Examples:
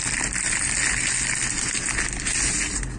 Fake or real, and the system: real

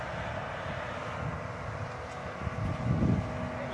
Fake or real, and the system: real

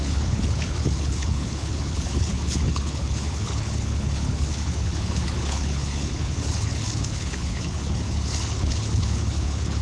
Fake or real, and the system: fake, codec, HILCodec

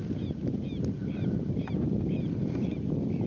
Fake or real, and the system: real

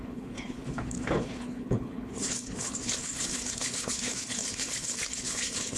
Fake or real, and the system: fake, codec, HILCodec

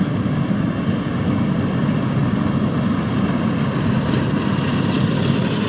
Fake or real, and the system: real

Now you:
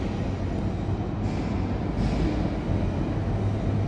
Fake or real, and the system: real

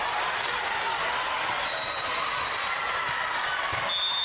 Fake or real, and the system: real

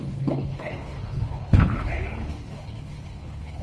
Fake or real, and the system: fake, codec, HILCodec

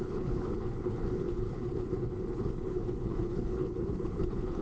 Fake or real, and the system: fake, codec, HILCodec